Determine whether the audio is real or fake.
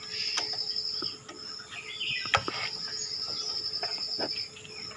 real